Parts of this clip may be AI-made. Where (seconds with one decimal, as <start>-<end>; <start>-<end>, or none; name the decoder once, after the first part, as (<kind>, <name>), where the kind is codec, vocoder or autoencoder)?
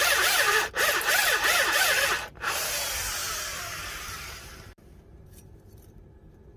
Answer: 0.0-3.2 (vocoder, BigVGAN v2); 3.9-6.6